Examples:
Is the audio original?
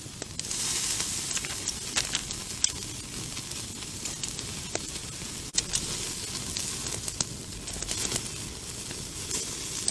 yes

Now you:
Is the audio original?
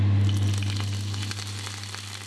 yes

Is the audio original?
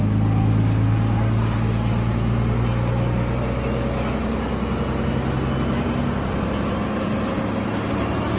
yes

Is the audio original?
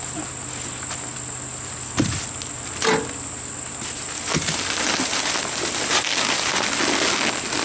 yes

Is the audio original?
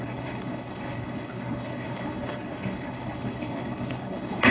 no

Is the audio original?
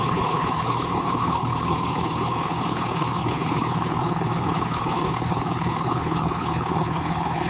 no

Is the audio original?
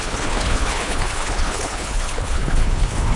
no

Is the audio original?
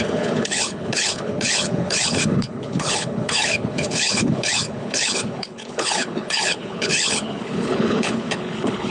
no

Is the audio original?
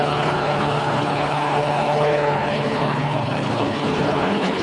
no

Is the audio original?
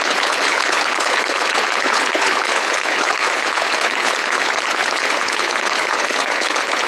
no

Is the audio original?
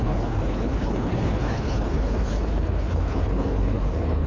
no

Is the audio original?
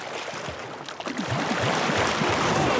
yes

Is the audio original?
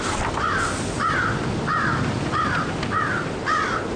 yes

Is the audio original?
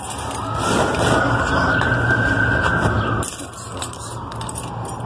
yes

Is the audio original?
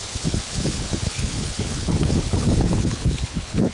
no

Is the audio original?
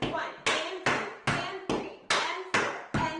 yes